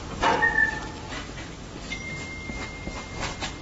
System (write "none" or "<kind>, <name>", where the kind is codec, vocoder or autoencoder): none